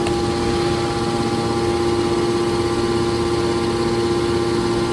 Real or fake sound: real